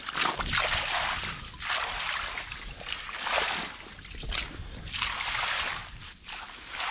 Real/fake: real